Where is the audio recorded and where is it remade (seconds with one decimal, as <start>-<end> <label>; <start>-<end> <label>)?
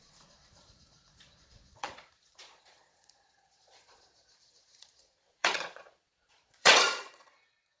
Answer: 0.0-7.8 remade